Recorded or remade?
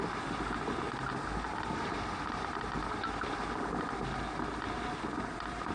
recorded